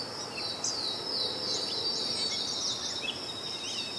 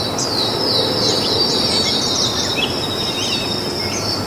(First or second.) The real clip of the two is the first